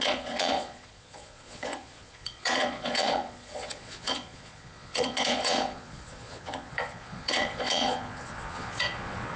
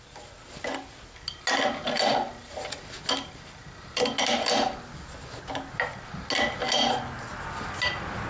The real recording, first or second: second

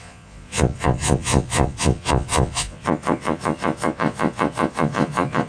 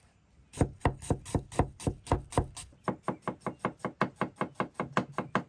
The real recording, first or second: second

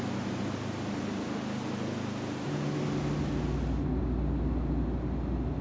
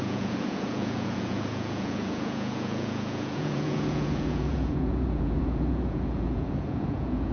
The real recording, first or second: first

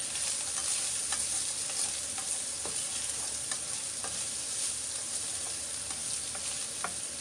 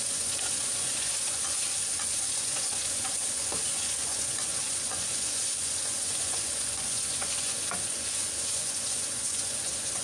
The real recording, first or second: first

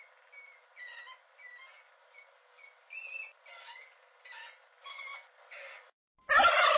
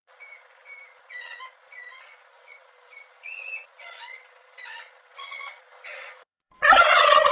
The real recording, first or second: first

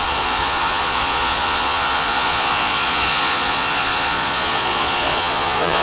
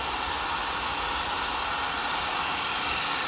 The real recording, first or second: second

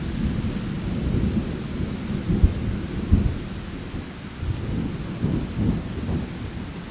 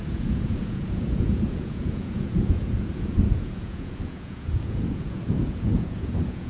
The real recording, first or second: first